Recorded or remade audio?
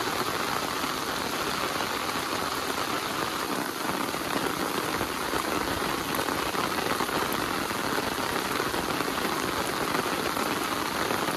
recorded